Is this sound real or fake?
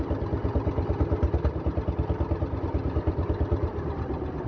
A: real